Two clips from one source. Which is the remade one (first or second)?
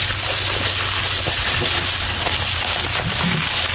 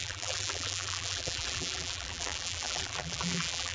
second